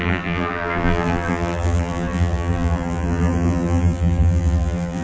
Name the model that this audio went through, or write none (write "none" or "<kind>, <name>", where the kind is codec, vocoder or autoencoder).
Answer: vocoder, BigVGAN v2